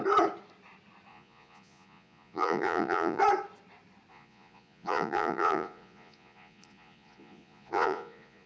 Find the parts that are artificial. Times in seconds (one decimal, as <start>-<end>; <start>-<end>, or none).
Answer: 1.1-3.2; 4.1-8.5